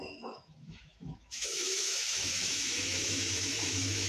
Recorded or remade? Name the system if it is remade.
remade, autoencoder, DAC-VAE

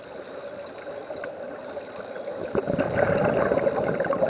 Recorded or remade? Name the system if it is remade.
recorded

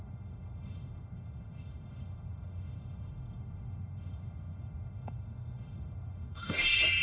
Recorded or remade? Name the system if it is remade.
remade, autoencoder, DAC-VAE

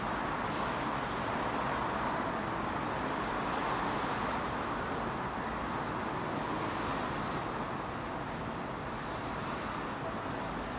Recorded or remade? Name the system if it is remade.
recorded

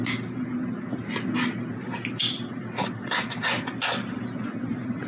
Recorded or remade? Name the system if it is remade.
recorded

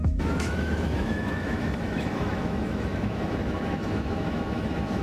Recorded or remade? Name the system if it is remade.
remade, autoencoder, DAC-VAE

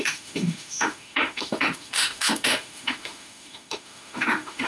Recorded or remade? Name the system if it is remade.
remade, autoencoder, DAC-VAE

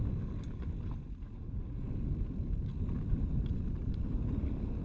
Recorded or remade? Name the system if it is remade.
recorded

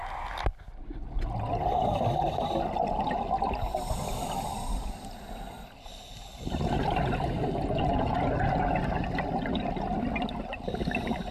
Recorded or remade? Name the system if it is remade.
recorded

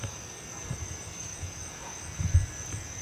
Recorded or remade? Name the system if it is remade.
recorded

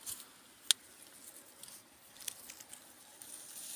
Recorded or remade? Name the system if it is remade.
recorded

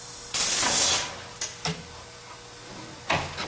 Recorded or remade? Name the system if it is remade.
recorded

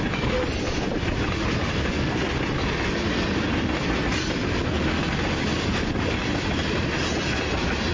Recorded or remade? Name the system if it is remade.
recorded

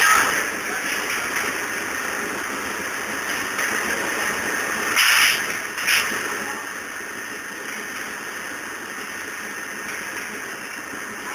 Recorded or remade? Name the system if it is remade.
recorded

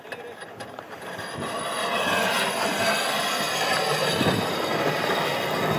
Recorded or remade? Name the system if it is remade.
recorded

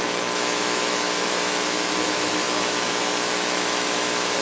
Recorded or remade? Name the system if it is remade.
remade, autoencoder, DAC-VAE